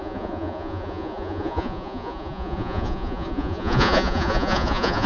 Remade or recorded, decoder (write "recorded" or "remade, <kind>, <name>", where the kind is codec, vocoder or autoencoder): remade, vocoder, Vocos